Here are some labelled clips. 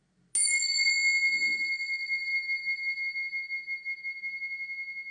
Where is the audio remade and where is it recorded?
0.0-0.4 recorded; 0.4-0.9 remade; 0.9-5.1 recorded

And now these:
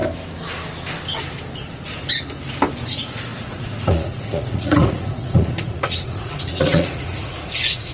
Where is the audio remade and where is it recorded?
0.0-2.9 recorded; 2.9-7.9 remade

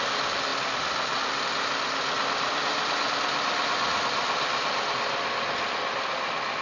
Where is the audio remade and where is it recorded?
0.0-6.6 recorded

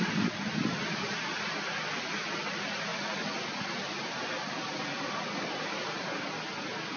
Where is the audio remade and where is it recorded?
0.0-7.0 recorded

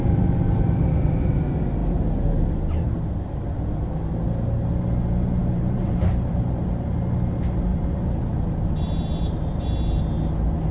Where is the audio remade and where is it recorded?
0.0-5.4 recorded; 5.4-6.5 remade; 6.5-7.7 recorded; 7.7-10.0 remade; 10.0-10.7 recorded

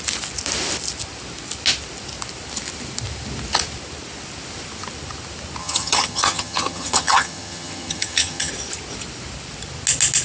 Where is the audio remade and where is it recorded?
0.0-5.6 recorded; 5.6-8.5 remade; 8.5-10.2 recorded